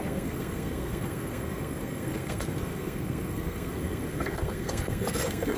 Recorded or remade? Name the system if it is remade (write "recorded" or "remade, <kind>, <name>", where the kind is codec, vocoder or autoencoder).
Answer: remade, codec, SNAC